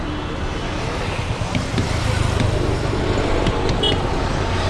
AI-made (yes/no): no